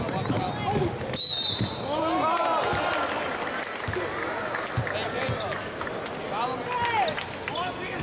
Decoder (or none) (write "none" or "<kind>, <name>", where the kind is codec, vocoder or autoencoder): none